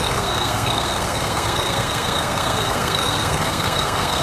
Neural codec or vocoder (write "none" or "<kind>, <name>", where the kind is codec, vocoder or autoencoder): codec, SNAC